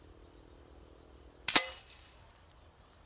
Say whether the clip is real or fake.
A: real